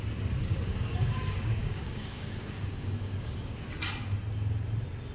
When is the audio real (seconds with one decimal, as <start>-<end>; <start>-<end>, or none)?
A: 0.0-0.5; 3.6-5.1